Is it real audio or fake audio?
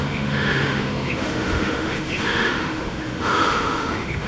fake